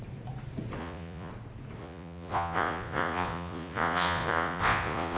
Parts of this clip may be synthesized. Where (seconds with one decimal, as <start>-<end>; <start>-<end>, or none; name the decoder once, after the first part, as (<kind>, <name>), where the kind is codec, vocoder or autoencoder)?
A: 0.8-1.3 (vocoder, Vocos); 1.8-5.2